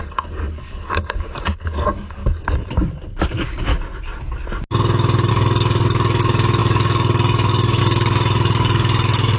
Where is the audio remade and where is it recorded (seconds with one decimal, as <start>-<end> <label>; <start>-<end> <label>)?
0.0-2.2 remade; 2.2-3.3 recorded; 3.3-3.7 remade; 3.7-5.3 recorded; 5.3-9.4 remade

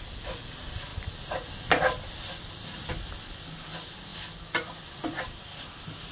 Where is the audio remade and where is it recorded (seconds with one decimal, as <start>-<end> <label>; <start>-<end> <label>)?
0.0-6.1 recorded

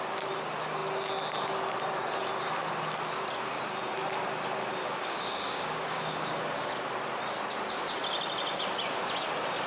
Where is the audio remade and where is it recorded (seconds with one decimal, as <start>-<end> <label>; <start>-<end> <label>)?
0.0-4.8 recorded; 4.8-6.7 remade; 6.7-9.7 recorded

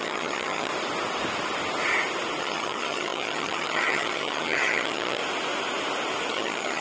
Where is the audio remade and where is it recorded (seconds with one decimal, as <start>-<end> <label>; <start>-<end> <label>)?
0.0-0.7 remade; 0.7-2.4 recorded; 2.4-5.2 remade; 5.2-6.3 recorded; 6.3-6.8 remade